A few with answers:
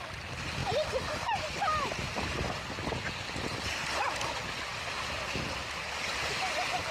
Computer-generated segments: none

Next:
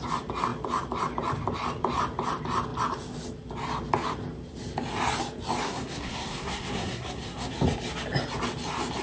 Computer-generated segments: 5.6-7.5 (codec, SNAC)

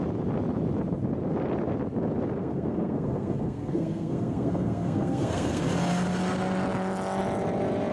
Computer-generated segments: 2.4-5.6 (codec, SNAC)

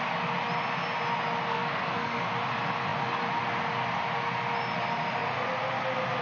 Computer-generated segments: 1.5-2.3 (codec, SNAC)

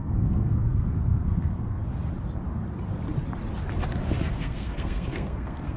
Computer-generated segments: 0.0-1.8 (codec, SNAC); 4.3-5.8

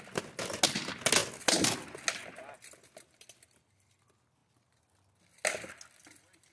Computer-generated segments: none

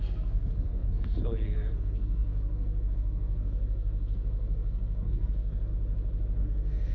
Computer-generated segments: 0.0-5.7 (codec, SNAC); 6.4-6.9